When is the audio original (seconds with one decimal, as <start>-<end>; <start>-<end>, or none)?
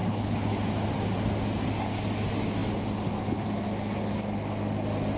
0.6-5.2